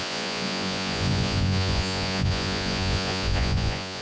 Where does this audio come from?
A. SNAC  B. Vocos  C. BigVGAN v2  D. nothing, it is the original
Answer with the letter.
B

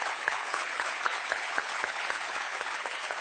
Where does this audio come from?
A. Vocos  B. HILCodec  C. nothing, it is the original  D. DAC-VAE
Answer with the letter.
B